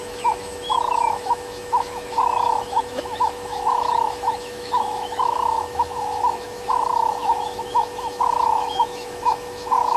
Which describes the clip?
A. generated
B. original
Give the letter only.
A